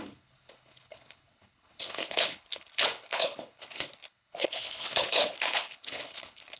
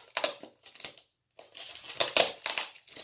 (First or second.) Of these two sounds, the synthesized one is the first